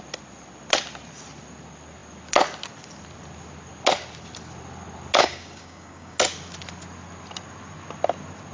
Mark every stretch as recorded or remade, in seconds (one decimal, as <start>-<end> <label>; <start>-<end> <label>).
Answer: 0.0-5.2 recorded; 5.2-6.2 remade; 6.2-8.5 recorded